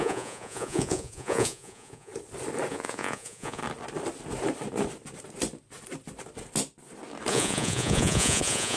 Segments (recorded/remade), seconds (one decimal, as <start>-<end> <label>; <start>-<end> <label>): 0.0-2.1 remade; 2.1-2.7 recorded; 2.7-3.6 remade; 3.6-7.3 recorded; 7.3-8.8 remade